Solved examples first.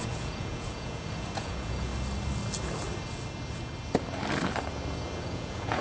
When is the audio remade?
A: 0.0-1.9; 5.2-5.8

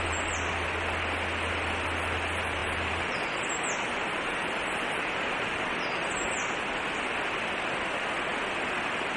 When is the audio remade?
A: 2.6-6.6

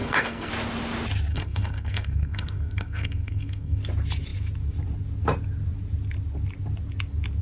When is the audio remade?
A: 0.0-0.5; 1.3-3.8

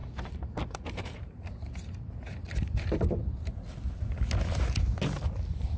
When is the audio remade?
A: 0.0-3.5